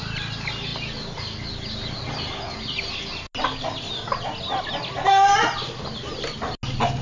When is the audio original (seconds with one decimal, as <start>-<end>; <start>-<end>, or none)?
0.0-7.0

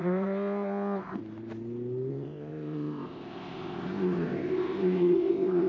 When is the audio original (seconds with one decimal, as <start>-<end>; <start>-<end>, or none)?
1.2-2.1

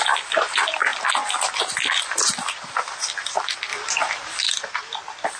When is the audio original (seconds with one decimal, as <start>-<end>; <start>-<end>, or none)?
0.0-5.4

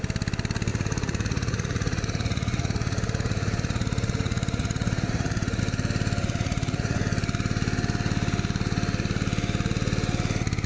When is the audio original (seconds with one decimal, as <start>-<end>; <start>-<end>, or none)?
0.0-0.7; 5.6-6.2; 7.0-10.7

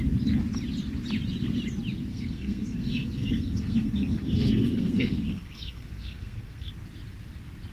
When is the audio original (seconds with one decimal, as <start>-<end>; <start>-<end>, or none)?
0.0-2.1; 6.7-7.7

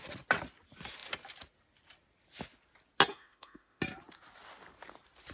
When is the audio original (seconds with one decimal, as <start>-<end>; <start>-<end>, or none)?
0.0-3.1; 3.8-5.3

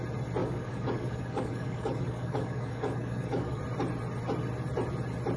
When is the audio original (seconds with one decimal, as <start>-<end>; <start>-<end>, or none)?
0.0-0.4; 3.6-5.4